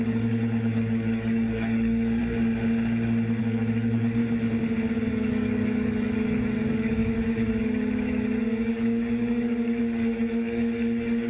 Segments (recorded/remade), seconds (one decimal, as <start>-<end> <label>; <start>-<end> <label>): 0.0-2.2 remade; 2.2-3.4 recorded; 3.4-4.2 remade; 4.2-5.1 recorded; 5.1-11.3 remade